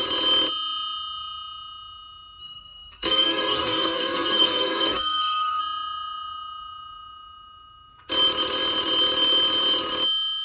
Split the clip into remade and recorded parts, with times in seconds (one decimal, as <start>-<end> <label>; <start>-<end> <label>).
0.0-2.4 recorded; 2.4-5.6 remade; 5.6-10.4 recorded

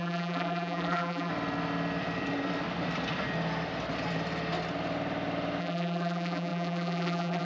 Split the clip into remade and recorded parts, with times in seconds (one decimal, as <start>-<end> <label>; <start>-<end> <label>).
0.0-1.3 remade; 1.3-5.6 recorded; 5.6-7.4 remade

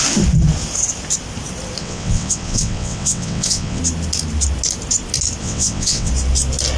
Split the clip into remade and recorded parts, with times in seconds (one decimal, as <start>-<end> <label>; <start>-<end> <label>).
0.0-1.8 recorded; 1.8-3.8 remade; 3.8-5.4 recorded; 5.4-6.1 remade; 6.1-6.8 recorded

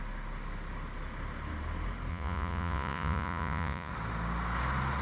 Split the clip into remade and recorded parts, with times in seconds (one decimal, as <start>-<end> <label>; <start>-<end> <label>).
0.0-2.1 recorded; 2.1-3.9 remade; 3.9-5.0 recorded

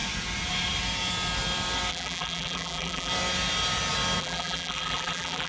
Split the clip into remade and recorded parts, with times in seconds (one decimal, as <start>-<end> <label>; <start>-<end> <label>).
0.0-1.9 recorded; 1.9-3.1 remade; 3.1-4.2 recorded; 4.2-5.5 remade

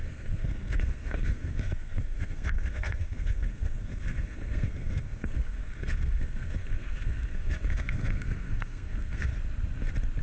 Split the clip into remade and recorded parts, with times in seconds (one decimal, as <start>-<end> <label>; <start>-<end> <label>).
0.0-9.3 remade; 9.3-10.2 recorded

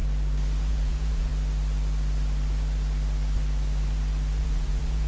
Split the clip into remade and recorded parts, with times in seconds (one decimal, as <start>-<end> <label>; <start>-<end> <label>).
0.0-0.7 recorded; 0.7-1.3 remade; 1.3-4.4 recorded; 4.4-5.1 remade